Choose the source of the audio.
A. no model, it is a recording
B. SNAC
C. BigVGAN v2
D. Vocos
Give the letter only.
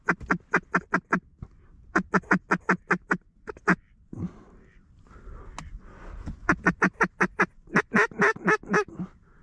A